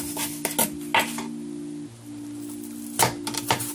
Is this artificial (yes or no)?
no